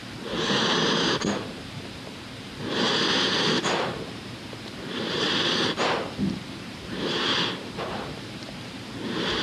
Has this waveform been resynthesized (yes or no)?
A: yes